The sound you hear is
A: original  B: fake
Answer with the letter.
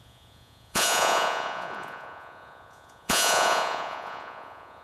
B